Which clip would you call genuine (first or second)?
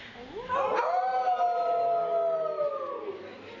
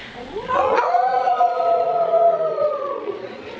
first